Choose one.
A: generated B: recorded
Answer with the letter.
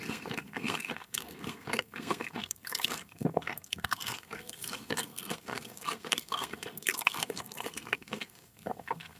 A